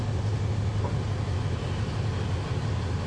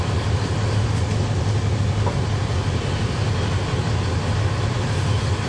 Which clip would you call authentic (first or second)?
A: first